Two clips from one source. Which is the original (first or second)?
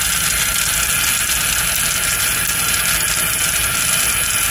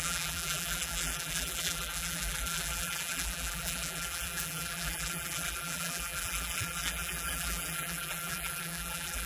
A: first